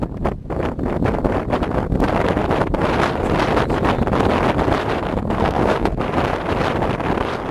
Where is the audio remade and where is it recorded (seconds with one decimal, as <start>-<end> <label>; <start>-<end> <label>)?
0.0-5.1 recorded; 5.1-6.0 remade; 6.0-7.5 recorded